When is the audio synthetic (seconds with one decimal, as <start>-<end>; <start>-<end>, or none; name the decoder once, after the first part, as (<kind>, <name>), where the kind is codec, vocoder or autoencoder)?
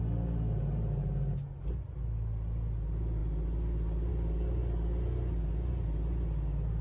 none